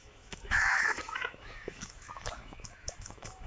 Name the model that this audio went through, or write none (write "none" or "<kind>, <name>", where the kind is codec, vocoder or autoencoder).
autoencoder, DAC-VAE